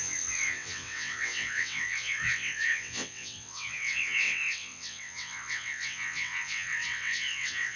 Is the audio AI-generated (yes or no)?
yes